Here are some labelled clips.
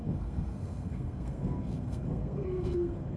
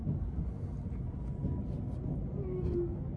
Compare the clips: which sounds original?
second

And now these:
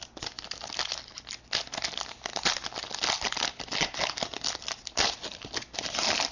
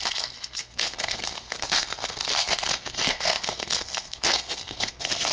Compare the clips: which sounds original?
first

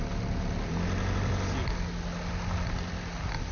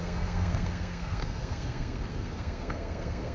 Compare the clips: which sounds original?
first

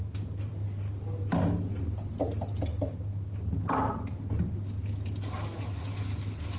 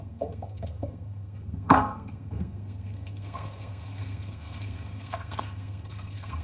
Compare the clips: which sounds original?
first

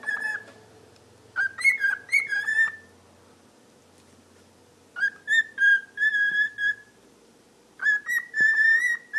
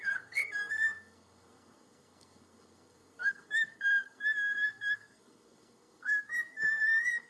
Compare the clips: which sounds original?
first